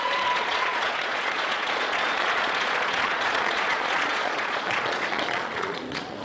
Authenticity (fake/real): fake